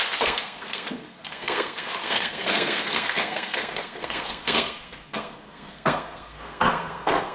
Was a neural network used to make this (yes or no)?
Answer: yes